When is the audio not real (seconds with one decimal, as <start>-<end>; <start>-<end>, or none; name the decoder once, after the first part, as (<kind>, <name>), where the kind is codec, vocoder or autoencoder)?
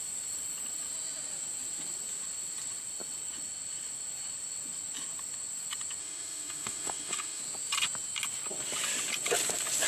6.0-7.4 (autoencoder, DAC-VAE)